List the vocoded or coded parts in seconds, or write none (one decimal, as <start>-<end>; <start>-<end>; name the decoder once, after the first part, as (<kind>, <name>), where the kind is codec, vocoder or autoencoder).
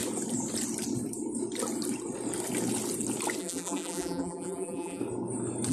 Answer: 3.4-5.0 (vocoder, BigVGAN v2)